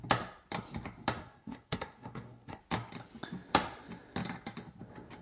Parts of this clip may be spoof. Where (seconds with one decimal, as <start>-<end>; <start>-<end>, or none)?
1.2-2.6